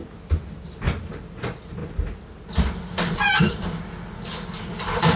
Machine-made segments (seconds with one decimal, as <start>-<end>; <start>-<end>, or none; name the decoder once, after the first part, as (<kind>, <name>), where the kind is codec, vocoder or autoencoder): none